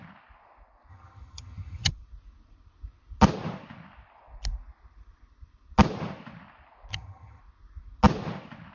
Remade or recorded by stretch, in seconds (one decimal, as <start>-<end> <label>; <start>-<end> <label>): 0.0-0.9 recorded; 0.9-1.9 remade; 1.9-6.9 recorded; 6.9-7.4 remade; 7.4-8.7 recorded